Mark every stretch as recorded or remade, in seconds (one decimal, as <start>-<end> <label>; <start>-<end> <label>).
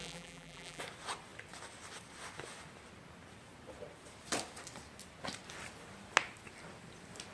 0.0-0.8 remade; 0.8-7.3 recorded